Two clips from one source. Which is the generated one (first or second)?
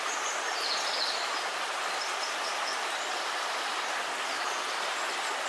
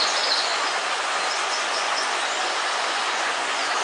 second